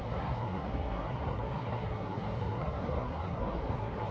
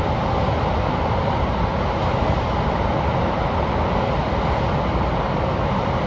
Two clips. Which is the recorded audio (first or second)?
second